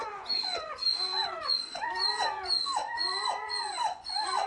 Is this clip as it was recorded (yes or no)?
no